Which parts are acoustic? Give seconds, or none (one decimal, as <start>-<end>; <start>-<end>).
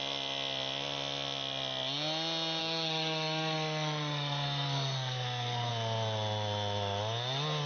0.0-2.6; 5.7-7.7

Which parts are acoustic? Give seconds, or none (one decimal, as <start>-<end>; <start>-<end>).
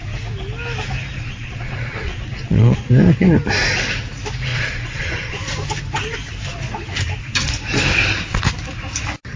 0.0-1.2; 2.9-4.5; 5.4-9.4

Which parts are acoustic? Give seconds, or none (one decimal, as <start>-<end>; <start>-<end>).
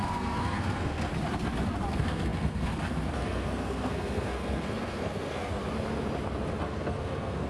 1.1-1.9; 5.6-6.6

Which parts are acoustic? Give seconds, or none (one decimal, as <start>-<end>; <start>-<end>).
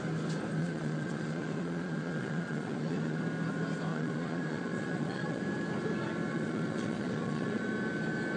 0.0-0.6; 3.2-3.9; 5.4-6.3; 7.6-8.4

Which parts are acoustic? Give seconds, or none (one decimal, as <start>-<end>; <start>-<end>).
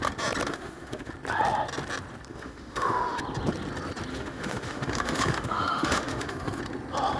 0.0-0.5; 1.1-2.3; 3.2-4.1; 6.6-7.2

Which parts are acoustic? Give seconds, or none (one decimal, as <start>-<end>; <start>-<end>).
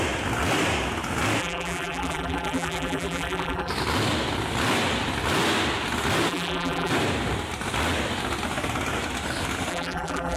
0.0-1.4; 3.7-6.3; 6.9-9.7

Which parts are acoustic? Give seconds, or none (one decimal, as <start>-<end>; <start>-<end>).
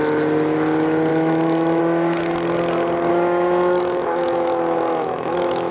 0.0-1.1; 1.8-3.1